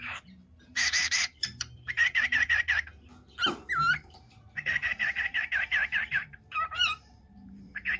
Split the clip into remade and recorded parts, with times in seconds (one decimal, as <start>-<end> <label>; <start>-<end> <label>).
0.0-2.9 remade; 2.9-3.9 recorded; 3.9-8.0 remade